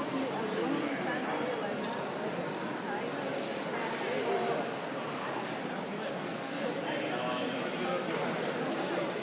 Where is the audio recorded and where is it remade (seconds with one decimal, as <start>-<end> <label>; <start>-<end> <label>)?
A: 0.0-6.1 recorded; 6.1-6.7 remade; 6.7-9.2 recorded